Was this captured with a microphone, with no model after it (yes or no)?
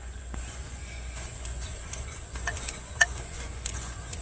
no